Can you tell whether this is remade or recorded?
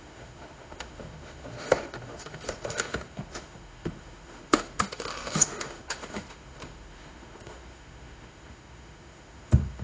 remade